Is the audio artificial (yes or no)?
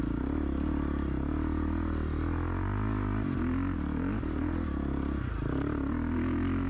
no